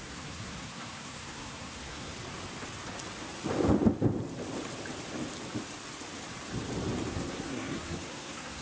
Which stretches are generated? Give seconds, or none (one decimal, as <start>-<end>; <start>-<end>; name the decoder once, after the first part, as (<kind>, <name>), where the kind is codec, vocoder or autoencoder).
0.0-2.1 (codec, SNAC); 7.1-8.6